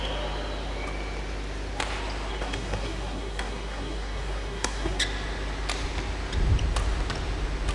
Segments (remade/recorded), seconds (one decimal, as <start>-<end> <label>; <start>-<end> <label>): 0.0-2.3 recorded; 2.3-5.0 remade; 5.0-7.7 recorded